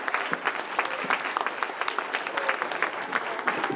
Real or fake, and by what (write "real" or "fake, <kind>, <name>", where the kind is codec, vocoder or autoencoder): real